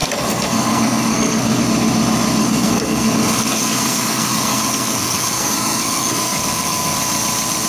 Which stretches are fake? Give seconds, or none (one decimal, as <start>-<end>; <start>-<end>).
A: 0.0-1.6; 2.4-7.0